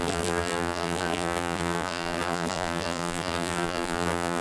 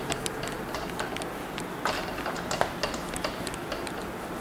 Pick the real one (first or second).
second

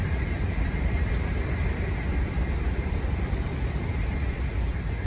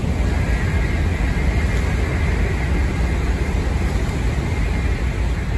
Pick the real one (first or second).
second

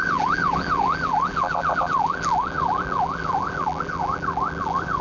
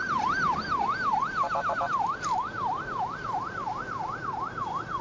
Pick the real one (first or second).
second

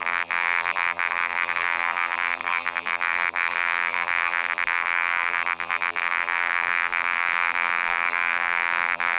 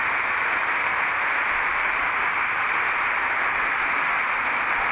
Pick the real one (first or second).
second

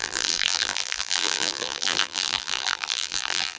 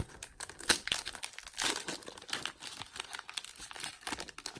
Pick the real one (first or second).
second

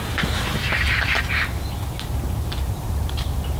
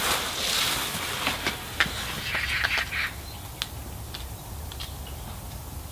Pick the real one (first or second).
second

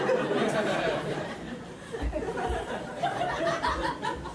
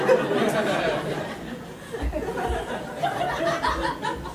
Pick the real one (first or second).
second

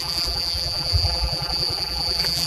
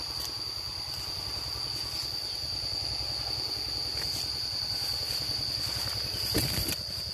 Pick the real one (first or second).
second